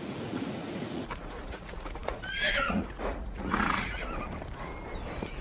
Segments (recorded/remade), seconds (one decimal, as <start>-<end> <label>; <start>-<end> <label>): 0.0-4.0 remade; 4.0-5.4 recorded